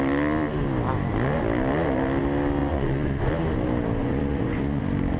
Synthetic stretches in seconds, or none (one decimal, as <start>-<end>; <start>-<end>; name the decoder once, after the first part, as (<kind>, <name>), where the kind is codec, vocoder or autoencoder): 2.6-3.3 (vocoder, Vocos); 4.0-4.8